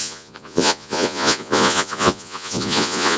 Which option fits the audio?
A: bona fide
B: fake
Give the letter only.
B